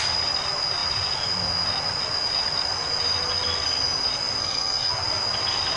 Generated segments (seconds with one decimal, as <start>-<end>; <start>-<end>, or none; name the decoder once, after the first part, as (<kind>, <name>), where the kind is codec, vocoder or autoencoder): 4.4-4.9 (codec, SNAC)